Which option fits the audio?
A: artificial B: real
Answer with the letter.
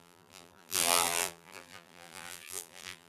A